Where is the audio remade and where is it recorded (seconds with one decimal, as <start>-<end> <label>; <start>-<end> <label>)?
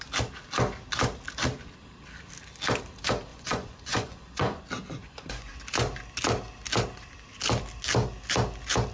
0.0-3.3 recorded; 3.3-4.6 remade; 4.6-5.0 recorded; 5.0-5.6 remade; 5.6-8.9 recorded